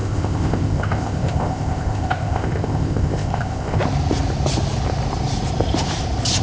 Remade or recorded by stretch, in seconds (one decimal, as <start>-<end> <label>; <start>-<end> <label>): 0.0-3.8 remade; 3.8-6.4 recorded